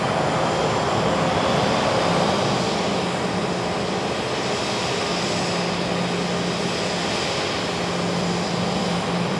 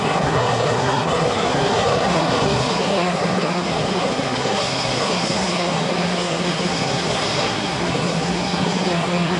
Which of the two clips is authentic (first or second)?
first